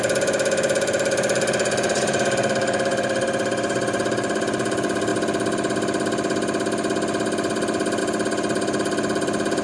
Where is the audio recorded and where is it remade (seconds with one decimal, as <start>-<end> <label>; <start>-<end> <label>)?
0.0-5.1 remade; 5.1-8.0 recorded; 8.0-9.6 remade